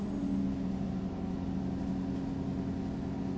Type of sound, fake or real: real